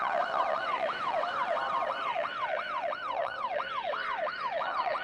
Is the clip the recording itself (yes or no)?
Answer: no